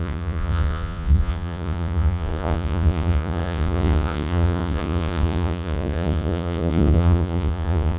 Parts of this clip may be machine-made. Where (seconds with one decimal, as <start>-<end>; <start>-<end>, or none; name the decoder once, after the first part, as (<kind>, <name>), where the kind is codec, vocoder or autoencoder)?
0.0-8.0 (vocoder, Vocos)